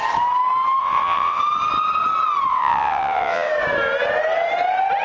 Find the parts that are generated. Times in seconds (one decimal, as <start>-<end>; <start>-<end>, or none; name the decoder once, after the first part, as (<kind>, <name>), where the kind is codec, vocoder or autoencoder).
0.8-1.4 (vocoder, WaveNeXt); 2.5-3.5